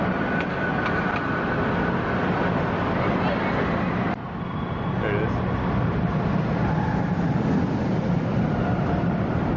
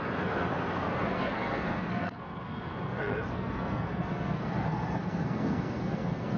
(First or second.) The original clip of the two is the first